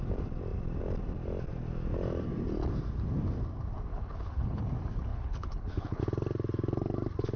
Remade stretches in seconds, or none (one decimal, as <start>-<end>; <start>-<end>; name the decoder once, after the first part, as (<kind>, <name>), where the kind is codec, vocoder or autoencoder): 3.9-4.6 (codec, HILCodec); 5.1-6.0

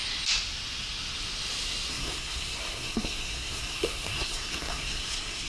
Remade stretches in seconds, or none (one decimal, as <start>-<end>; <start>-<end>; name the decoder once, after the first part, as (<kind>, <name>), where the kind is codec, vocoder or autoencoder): 1.9-5.5 (codec, SNAC)

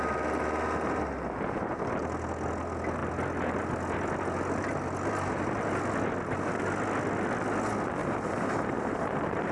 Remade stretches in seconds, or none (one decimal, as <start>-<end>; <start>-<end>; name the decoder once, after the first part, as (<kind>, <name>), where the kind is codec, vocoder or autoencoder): 8.0-9.5 (vocoder, BigVGAN v2)

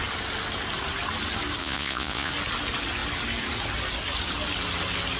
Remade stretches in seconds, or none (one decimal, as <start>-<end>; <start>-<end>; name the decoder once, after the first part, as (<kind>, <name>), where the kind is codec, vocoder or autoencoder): 1.6-2.3 (vocoder, Vocos)

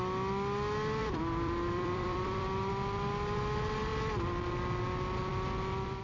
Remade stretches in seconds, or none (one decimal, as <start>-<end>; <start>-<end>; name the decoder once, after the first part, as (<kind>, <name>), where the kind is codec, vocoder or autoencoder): 1.0-2.7 (vocoder, BigVGAN v2); 5.3-6.0

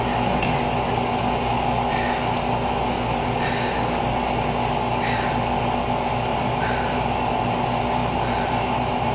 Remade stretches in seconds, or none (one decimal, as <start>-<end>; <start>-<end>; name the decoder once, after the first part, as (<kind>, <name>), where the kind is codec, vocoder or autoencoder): 6.3-7.3 (vocoder, BigVGAN v2); 8.0-9.1

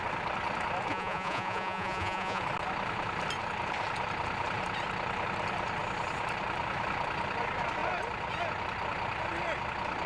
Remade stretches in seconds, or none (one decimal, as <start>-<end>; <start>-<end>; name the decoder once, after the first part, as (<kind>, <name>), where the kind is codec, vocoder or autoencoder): 0.9-2.4 (vocoder, Vocos)